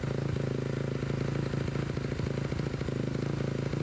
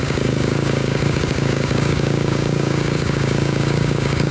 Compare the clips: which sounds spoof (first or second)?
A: second